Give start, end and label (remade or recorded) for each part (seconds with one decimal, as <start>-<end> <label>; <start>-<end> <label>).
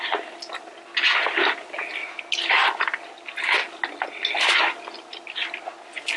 0.0-6.2 recorded